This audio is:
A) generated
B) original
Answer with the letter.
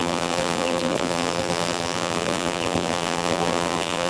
A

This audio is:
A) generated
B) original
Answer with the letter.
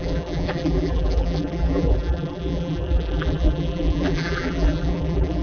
A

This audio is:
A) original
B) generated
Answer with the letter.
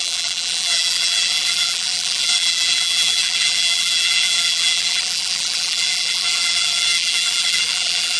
B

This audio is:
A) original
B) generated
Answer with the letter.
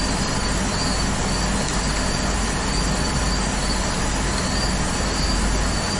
A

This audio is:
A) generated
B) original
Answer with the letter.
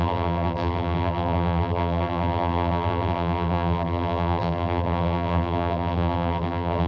A